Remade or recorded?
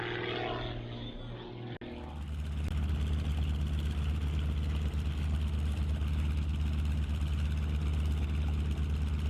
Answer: recorded